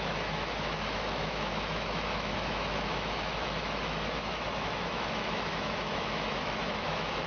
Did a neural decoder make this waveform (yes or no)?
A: yes